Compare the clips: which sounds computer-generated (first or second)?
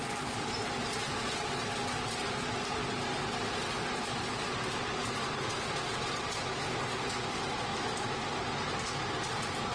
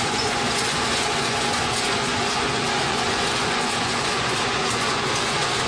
second